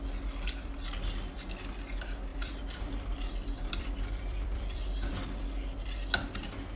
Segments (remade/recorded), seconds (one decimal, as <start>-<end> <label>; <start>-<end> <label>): 0.0-2.3 recorded; 2.3-5.1 remade; 5.1-6.8 recorded